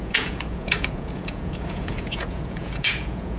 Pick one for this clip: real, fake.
fake